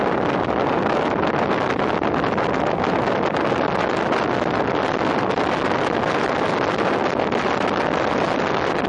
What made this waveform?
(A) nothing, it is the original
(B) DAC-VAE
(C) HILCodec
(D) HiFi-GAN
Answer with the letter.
A